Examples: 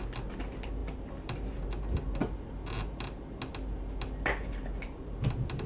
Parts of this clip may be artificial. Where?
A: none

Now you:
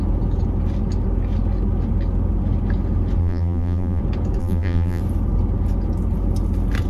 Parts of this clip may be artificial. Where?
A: 3.2-4.0; 4.4-5.0

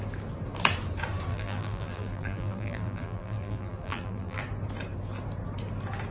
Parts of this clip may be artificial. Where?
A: 1.3-4.4

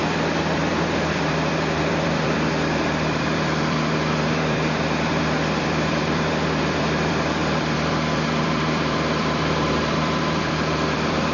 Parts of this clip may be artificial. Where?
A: 0.0-11.3

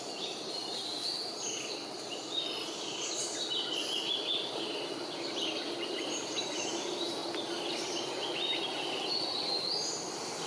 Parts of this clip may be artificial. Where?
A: 0.0-0.9; 5.9-7.2; 9.6-10.5

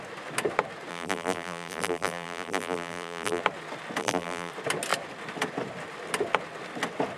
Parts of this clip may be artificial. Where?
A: 0.9-3.4; 4.0-4.5

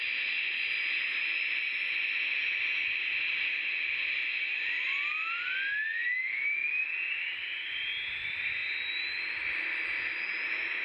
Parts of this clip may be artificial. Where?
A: none

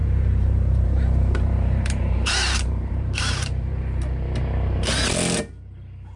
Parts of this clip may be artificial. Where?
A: 0.0-3.7